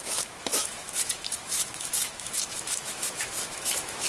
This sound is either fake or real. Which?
fake